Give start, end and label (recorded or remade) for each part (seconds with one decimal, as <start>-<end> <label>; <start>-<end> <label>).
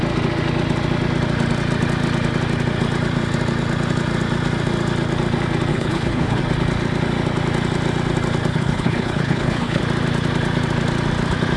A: 0.0-5.7 recorded; 5.7-6.4 remade; 6.4-8.5 recorded; 8.5-9.8 remade; 9.8-11.6 recorded